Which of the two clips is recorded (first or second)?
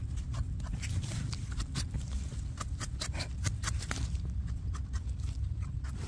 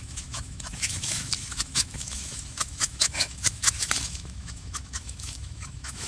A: first